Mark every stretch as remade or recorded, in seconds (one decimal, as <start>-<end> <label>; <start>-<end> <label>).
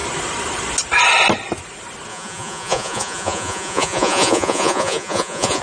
0.0-2.1 recorded; 2.1-5.6 remade